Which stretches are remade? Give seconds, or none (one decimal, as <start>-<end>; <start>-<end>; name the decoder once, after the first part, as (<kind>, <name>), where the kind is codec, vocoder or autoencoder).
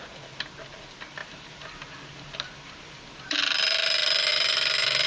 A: 1.2-3.4 (vocoder, BigVGAN v2); 4.3-5.1